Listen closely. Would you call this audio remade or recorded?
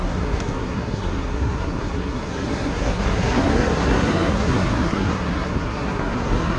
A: remade